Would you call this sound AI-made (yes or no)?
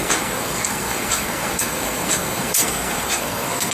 yes